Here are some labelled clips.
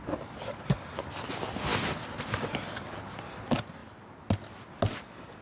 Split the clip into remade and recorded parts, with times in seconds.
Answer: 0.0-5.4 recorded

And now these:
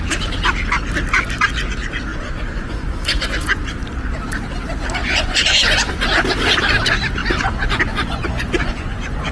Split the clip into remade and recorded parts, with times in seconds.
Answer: 0.0-2.1 recorded; 2.1-3.6 remade; 3.6-5.0 recorded; 5.0-5.9 remade; 5.9-7.2 recorded; 7.2-9.3 remade

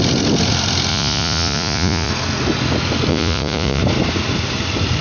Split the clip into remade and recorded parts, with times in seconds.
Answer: 0.0-0.9 recorded; 0.9-2.1 remade; 2.1-3.1 recorded; 3.1-3.8 remade; 3.8-5.0 recorded

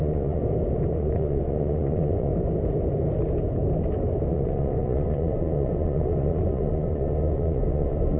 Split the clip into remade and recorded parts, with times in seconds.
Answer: 0.0-0.4 remade; 0.4-0.9 recorded; 0.9-2.3 remade; 2.3-4.3 recorded; 4.3-8.2 remade

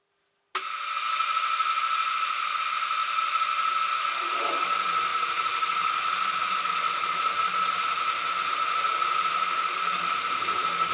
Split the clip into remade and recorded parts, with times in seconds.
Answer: 0.0-6.7 recorded; 6.7-7.3 remade; 7.3-10.9 recorded

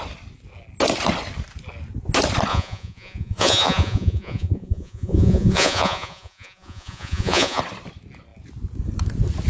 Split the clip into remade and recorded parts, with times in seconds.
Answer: 0.0-2.5 recorded; 2.5-7.6 remade; 7.6-9.5 recorded

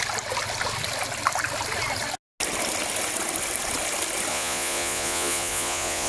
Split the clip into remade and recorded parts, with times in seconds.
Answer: 0.0-4.3 recorded; 4.3-6.1 remade